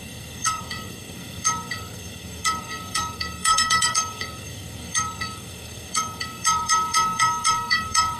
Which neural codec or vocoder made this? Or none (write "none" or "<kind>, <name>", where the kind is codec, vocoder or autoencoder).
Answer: codec, SNAC